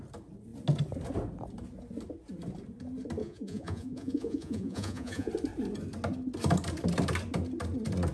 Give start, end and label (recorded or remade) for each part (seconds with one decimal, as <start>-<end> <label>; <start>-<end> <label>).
0.0-3.2 recorded; 3.2-5.3 remade; 5.3-8.1 recorded